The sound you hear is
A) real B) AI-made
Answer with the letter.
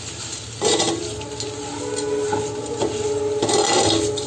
A